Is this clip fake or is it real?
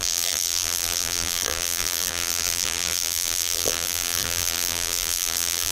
fake